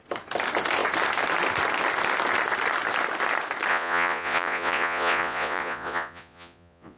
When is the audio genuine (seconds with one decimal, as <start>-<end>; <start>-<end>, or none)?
0.0-3.7